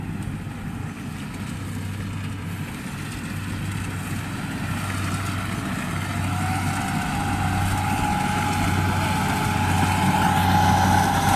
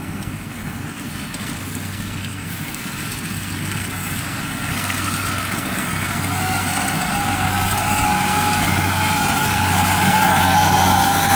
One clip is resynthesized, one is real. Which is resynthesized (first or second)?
second